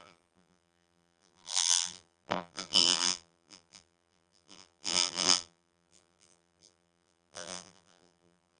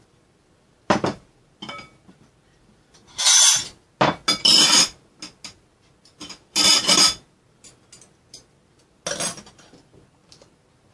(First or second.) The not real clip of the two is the first